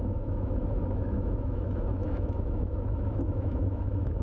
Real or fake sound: fake